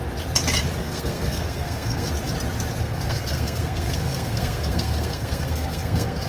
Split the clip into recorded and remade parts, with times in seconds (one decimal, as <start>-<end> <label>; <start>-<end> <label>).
0.0-0.8 recorded; 0.8-2.1 remade; 2.1-2.8 recorded; 2.8-6.3 remade